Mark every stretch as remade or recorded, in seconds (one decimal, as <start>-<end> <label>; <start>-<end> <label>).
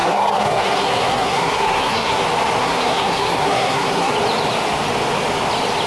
0.0-2.2 remade; 2.2-2.6 recorded; 2.6-4.1 remade; 4.1-5.9 recorded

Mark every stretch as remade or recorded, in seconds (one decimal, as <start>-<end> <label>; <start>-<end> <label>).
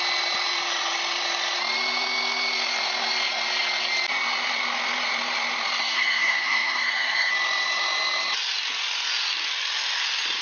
0.0-5.8 recorded; 5.8-7.3 remade; 7.3-10.4 recorded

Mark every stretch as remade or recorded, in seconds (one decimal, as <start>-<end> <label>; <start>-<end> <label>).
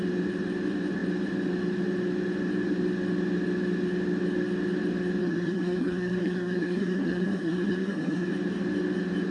0.0-5.2 recorded; 5.2-8.3 remade; 8.3-9.3 recorded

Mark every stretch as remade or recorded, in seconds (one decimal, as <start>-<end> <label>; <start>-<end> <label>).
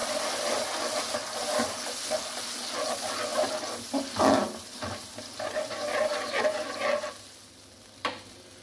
0.0-8.6 recorded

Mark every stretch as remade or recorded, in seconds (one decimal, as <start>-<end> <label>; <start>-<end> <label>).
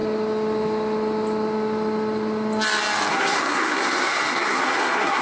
0.0-3.1 recorded; 3.1-5.2 remade